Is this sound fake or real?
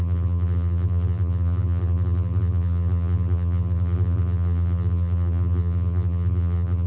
fake